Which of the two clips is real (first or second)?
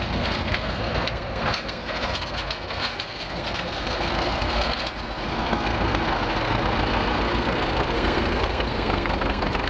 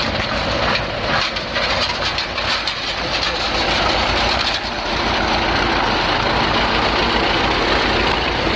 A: second